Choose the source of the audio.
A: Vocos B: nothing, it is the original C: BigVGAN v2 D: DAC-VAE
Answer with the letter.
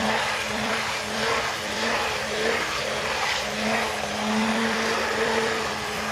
C